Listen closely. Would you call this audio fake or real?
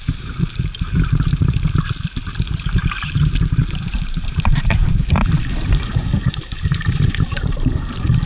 fake